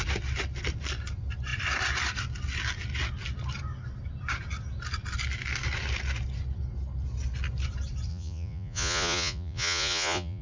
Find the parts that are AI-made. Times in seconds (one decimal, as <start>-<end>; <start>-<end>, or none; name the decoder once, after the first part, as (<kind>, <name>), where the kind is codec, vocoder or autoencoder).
8.1-10.4 (vocoder, Vocos)

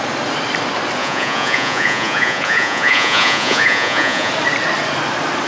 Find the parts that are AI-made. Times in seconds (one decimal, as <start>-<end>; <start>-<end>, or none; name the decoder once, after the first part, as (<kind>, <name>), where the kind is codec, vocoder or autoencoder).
1.0-4.3 (vocoder, Vocos)

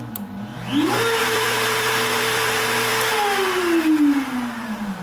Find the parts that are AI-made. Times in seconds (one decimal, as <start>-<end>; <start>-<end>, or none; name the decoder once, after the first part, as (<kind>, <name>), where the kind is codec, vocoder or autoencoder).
0.0-0.5 (vocoder, BigVGAN v2); 1.2-2.9; 3.8-5.0

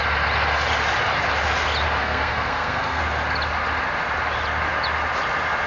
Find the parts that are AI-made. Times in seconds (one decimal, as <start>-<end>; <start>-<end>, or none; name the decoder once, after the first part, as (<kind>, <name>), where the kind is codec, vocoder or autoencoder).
2.0-3.0 (codec, SNAC)

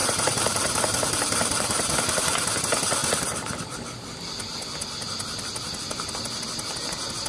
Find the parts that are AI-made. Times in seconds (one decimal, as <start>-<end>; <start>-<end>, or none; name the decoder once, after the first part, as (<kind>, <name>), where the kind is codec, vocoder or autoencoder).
0.0-2.6 (vocoder, BigVGAN v2); 3.0-3.6

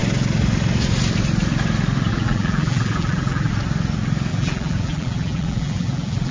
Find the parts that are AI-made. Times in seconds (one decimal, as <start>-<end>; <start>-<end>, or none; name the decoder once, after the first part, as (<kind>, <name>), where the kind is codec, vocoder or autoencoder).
2.1-3.5 (vocoder, BigVGAN v2); 4.3-6.3

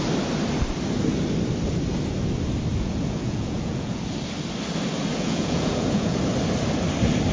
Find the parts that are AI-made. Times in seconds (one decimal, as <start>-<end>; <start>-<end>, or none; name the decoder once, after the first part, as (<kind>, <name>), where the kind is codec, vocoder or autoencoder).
2.7-4.0 (vocoder, Vocos); 5.1-6.2

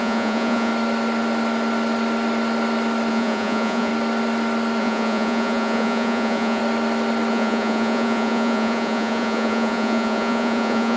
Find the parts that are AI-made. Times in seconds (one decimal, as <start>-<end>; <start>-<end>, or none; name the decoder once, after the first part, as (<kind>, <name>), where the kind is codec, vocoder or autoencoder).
0.0-0.7 (vocoder, Vocos); 3.1-3.9; 4.8-6.6; 7.3-11.0